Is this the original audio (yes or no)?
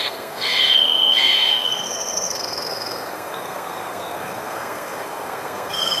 no